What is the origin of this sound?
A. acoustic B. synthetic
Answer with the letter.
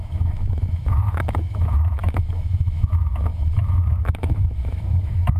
B